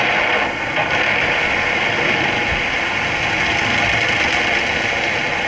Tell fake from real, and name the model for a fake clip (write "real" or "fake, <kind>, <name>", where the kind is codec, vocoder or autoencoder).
real